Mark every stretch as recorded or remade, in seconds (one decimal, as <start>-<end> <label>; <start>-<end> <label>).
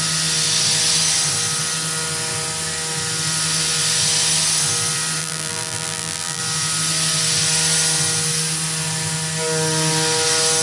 0.0-5.2 recorded; 5.2-6.4 remade; 6.4-10.6 recorded